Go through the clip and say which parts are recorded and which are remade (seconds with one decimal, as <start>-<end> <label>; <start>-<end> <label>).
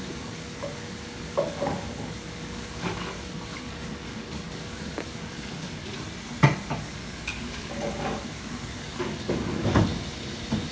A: 0.0-5.9 remade; 5.9-6.8 recorded; 6.8-9.9 remade; 9.9-10.7 recorded